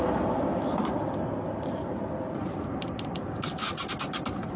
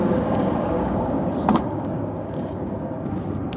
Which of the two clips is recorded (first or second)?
first